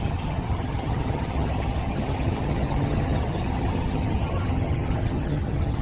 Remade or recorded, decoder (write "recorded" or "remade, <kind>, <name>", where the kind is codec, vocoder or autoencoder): remade, vocoder, HiFi-GAN